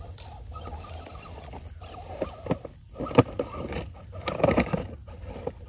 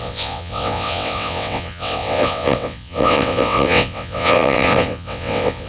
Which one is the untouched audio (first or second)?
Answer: first